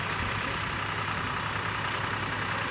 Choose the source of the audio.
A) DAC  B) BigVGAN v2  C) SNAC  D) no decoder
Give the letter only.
D